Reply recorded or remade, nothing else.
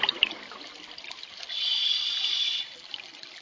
recorded